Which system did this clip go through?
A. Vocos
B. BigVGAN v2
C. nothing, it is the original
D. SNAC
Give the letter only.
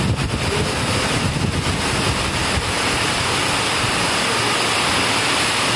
C